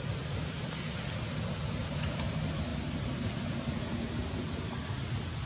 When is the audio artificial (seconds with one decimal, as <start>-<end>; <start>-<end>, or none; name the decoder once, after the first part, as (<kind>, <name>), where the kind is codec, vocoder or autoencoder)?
none